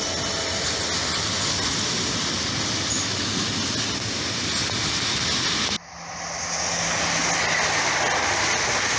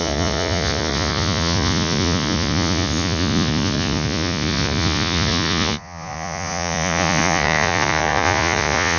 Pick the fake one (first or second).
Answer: second